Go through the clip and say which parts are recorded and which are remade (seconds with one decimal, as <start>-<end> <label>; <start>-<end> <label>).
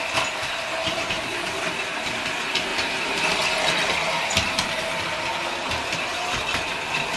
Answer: 0.0-0.8 recorded; 0.8-1.7 remade; 1.7-2.7 recorded; 2.7-3.3 remade; 3.3-7.2 recorded